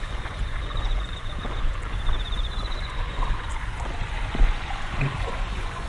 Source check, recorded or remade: remade